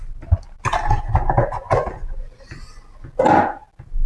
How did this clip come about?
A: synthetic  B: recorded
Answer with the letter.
B